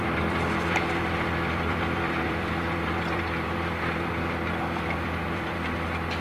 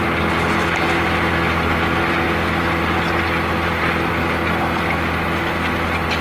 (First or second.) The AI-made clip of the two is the first